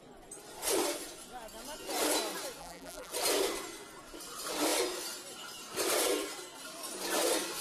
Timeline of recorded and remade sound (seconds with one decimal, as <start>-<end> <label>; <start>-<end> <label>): 0.0-2.6 recorded; 2.6-3.1 remade; 3.1-7.6 recorded